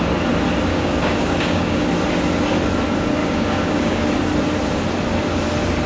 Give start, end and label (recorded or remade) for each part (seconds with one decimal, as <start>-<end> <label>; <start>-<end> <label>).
0.0-0.7 recorded; 0.7-1.9 remade; 1.9-3.2 recorded; 3.2-4.1 remade; 4.1-5.9 recorded